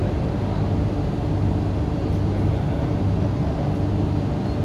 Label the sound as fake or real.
real